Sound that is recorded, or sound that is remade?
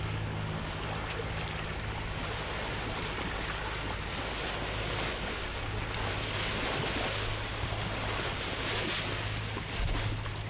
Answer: recorded